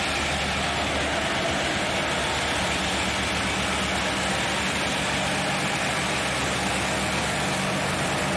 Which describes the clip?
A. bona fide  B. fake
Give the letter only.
A